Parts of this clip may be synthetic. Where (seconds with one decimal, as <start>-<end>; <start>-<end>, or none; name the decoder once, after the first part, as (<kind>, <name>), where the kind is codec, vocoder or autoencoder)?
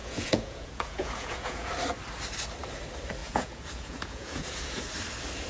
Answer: 0.0-1.7 (vocoder, Vocos); 3.2-4.8